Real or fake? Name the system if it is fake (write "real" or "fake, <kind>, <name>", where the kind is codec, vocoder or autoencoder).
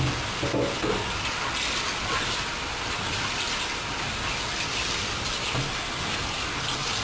real